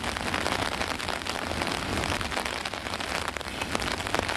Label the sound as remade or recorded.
recorded